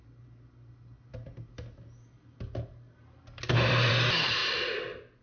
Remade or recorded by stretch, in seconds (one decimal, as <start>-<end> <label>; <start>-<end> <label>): 0.0-5.2 recorded